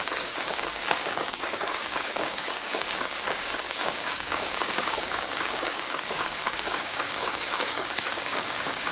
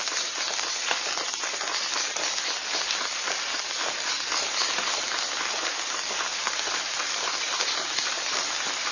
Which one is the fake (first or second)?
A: first